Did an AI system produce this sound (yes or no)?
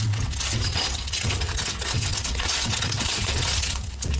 yes